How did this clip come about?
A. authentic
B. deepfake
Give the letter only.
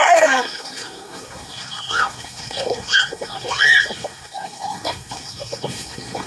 B